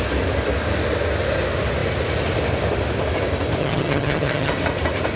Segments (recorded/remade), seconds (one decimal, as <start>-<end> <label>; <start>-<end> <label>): 0.0-3.6 recorded; 3.6-4.5 remade; 4.5-5.2 recorded